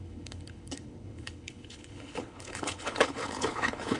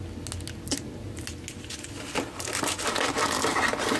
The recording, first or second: second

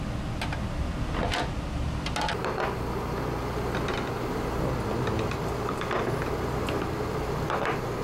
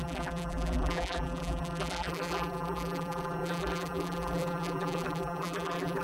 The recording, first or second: first